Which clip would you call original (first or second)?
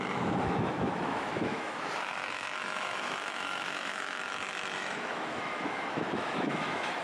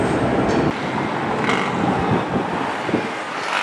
second